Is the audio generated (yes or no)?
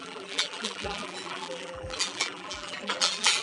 yes